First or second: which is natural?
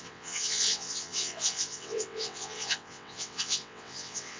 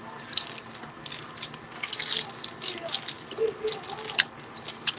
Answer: second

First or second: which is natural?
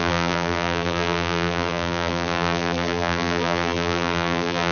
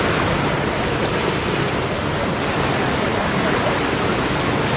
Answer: second